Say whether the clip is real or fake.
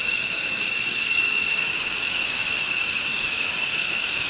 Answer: fake